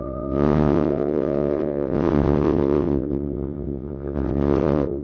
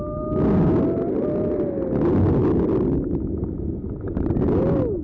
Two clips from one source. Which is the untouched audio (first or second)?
second